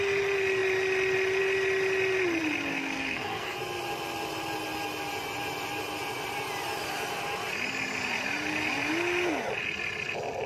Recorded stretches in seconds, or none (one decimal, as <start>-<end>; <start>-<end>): 0.0-2.7; 3.6-10.5